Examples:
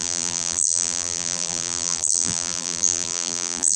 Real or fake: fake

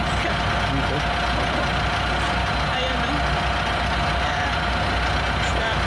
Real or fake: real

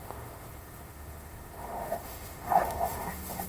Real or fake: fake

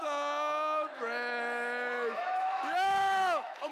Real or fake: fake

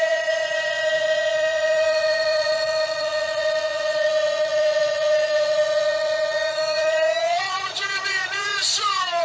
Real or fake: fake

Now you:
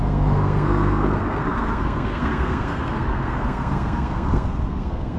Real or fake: fake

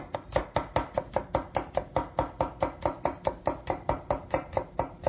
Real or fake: real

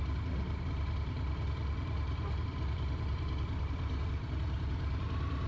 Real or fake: real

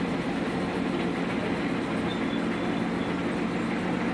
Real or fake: real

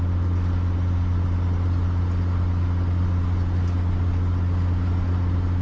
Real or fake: real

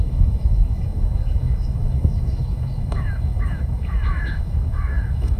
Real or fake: fake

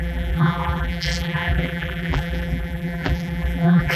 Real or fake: fake